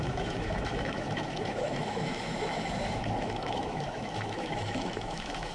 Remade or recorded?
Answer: remade